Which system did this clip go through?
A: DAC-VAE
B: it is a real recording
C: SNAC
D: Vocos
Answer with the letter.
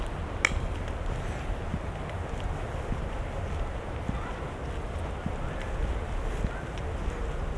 B